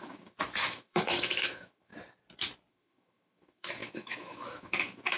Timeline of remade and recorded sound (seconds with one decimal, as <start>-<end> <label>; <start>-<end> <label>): 0.0-1.9 remade; 1.9-2.7 recorded; 2.7-5.2 remade